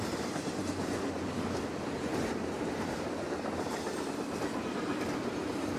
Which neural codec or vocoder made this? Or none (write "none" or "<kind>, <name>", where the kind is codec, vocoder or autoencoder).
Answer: none